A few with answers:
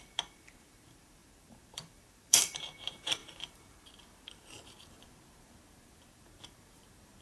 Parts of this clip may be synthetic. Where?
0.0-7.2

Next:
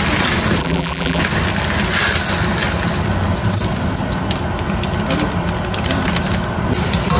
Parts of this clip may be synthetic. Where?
0.6-1.2